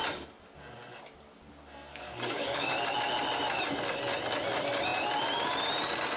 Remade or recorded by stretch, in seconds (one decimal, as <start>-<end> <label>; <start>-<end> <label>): 0.0-1.9 recorded; 1.9-2.7 remade; 2.7-6.2 recorded